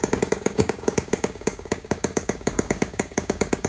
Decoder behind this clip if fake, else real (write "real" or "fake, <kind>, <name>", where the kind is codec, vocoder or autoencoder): fake, codec, DAC